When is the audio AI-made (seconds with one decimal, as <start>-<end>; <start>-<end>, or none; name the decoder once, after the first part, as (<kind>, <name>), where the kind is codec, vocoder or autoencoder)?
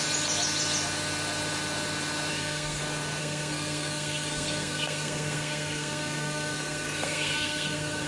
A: 2.3-2.8 (codec, SNAC); 3.2-8.1